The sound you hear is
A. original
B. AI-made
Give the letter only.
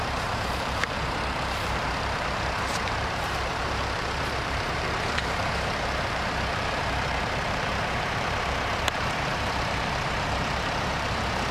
B